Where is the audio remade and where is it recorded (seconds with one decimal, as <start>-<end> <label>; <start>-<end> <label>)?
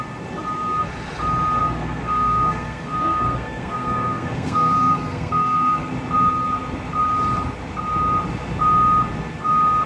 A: 0.0-1.6 recorded; 1.6-5.9 remade; 5.9-9.9 recorded